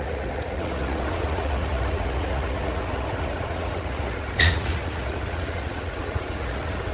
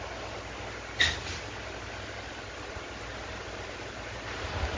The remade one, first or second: first